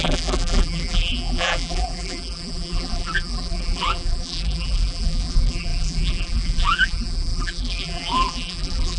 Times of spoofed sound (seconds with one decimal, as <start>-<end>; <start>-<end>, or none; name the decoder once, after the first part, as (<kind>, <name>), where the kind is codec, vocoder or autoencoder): 0.0-9.0 (vocoder, BigVGAN v2)